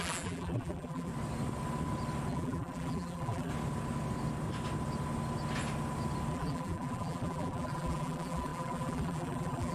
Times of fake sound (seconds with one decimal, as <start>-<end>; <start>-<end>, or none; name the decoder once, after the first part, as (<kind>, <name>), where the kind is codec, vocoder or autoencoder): 0.0-1.1 (vocoder, BigVGAN v2); 2.3-3.5; 6.3-9.7